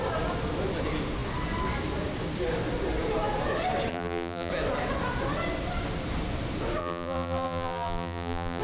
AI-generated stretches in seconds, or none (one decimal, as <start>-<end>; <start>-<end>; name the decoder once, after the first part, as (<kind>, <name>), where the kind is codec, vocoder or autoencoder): 3.9-4.5 (vocoder, BigVGAN v2); 6.8-8.6